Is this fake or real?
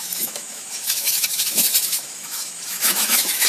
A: fake